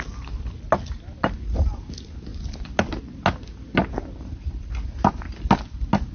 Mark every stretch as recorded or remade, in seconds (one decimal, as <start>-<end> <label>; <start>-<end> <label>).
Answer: 0.0-6.1 recorded